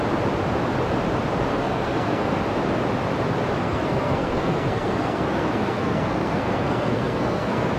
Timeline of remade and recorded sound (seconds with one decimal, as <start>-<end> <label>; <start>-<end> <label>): 0.0-1.5 recorded; 1.5-2.4 remade; 2.4-3.6 recorded; 3.6-7.8 remade